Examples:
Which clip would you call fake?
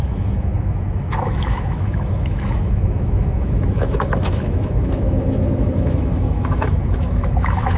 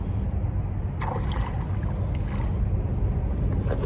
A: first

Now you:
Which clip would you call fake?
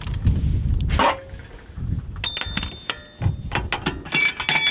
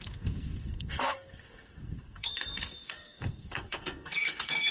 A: second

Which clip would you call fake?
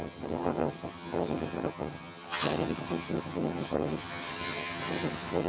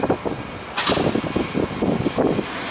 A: first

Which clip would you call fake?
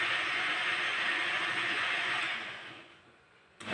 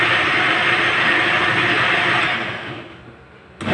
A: first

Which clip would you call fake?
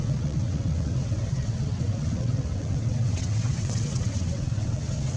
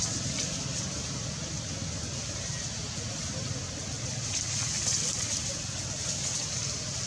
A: first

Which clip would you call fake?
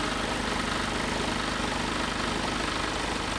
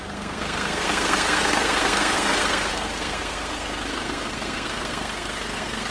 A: second